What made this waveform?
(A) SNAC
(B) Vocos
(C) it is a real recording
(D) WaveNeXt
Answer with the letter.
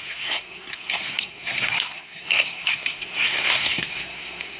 A